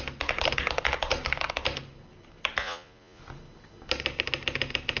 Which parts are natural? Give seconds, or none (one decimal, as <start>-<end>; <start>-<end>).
0.0-2.6; 3.2-5.0